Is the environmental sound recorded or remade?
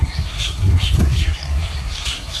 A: remade